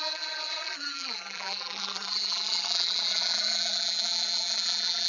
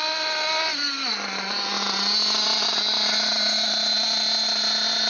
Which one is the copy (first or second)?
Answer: first